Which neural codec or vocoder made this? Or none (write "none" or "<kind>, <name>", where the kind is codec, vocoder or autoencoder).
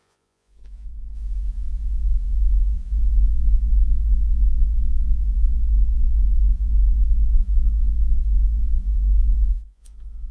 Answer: vocoder, Vocos